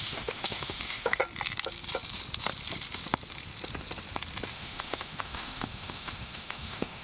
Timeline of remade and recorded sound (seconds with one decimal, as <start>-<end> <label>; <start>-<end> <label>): 0.0-1.2 remade; 1.2-4.5 recorded; 4.5-7.0 remade